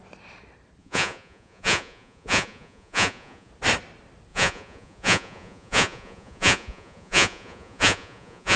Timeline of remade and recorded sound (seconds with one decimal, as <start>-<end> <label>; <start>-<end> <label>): 0.0-0.8 recorded; 0.8-3.5 remade; 3.5-4.3 recorded; 4.3-8.6 remade

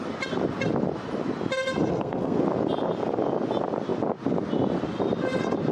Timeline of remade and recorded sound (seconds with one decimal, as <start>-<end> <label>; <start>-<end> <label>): 0.0-1.9 recorded; 1.9-2.4 remade; 2.4-5.7 recorded